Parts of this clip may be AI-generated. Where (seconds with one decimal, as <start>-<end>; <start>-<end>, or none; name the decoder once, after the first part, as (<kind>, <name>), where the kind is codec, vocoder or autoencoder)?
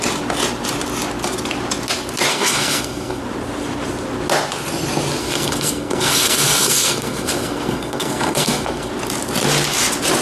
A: 2.3-3.2 (codec, SNAC); 5.2-8.9